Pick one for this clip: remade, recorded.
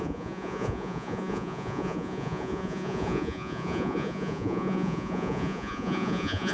remade